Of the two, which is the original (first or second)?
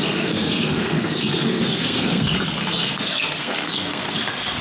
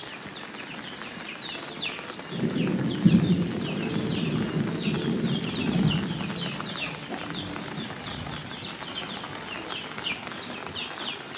second